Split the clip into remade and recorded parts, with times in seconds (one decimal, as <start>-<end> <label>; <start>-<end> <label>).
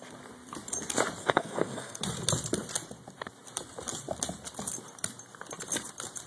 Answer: 0.0-1.2 recorded; 1.2-2.0 remade; 2.0-6.3 recorded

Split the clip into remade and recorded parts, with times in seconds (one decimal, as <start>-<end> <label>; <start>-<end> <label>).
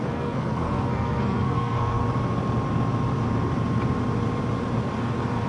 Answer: 0.0-2.0 remade; 2.0-5.5 recorded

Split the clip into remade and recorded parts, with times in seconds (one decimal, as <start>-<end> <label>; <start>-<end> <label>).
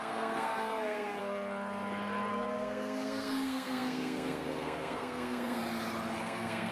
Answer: 0.0-1.2 remade; 1.2-2.3 recorded; 2.3-5.6 remade; 5.6-6.2 recorded; 6.2-6.7 remade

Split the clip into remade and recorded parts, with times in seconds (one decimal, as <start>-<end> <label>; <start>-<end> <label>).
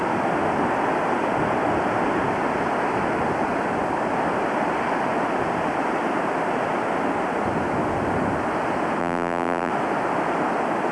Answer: 0.0-9.0 recorded; 9.0-9.7 remade; 9.7-10.9 recorded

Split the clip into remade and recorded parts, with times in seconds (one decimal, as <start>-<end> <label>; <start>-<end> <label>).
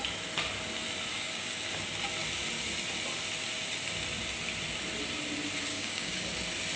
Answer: 0.0-1.1 recorded; 1.1-1.7 remade; 1.7-5.7 recorded; 5.7-6.2 remade; 6.2-6.8 recorded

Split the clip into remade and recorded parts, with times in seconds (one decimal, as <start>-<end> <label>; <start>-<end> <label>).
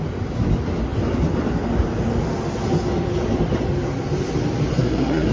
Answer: 0.0-4.7 recorded; 4.7-5.3 remade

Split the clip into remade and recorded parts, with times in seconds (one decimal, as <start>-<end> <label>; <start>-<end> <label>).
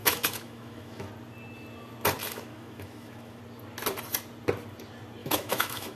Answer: 0.0-1.1 remade; 1.1-2.2 recorded; 2.2-3.4 remade; 3.4-5.2 recorded; 5.2-6.0 remade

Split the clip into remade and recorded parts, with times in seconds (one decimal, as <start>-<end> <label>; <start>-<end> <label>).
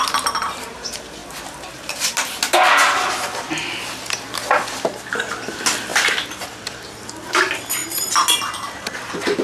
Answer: 0.0-9.4 recorded